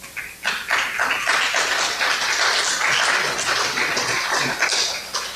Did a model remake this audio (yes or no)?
no